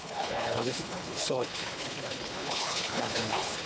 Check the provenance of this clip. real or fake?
fake